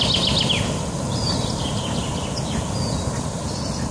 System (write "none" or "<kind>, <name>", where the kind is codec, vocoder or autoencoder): none